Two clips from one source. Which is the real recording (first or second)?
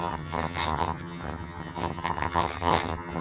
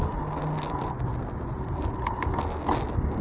second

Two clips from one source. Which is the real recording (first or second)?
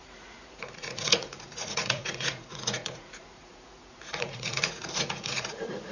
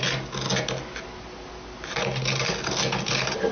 second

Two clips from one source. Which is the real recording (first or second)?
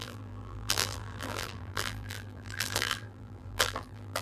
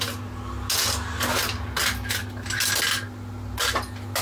second